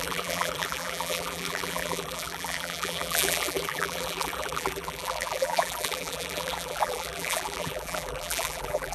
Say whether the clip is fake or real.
fake